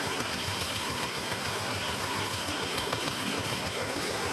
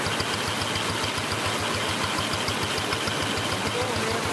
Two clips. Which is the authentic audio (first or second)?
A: second